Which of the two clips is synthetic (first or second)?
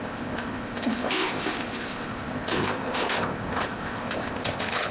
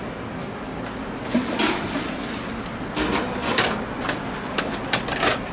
first